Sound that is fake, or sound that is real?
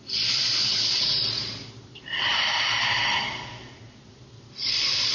fake